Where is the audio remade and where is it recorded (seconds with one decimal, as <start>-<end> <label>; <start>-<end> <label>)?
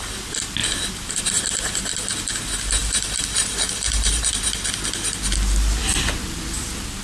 0.0-2.8 recorded; 2.8-4.3 remade; 4.3-7.0 recorded